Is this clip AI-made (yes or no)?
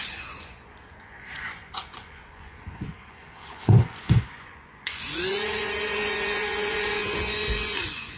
yes